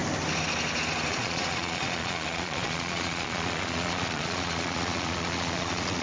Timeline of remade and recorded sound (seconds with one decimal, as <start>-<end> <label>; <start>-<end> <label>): 0.0-1.1 recorded; 1.1-6.0 remade